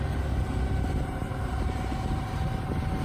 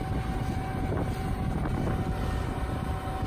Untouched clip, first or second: second